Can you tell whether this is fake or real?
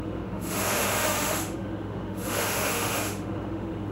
fake